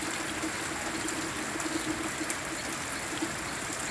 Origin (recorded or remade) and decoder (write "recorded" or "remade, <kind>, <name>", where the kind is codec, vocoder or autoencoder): recorded